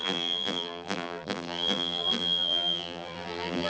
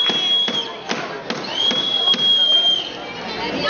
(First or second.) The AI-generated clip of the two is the first